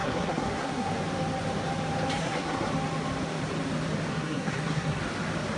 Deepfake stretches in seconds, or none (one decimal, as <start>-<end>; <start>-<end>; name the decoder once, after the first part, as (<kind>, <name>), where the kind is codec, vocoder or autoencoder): 0.0-0.9 (codec, SNAC); 2.2-2.7; 4.1-5.0